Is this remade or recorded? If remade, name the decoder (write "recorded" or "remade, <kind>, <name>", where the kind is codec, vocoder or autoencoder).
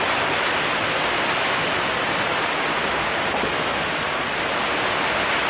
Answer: recorded